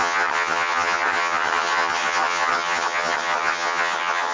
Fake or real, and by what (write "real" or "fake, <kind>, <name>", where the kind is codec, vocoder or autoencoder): fake, vocoder, HiFi-GAN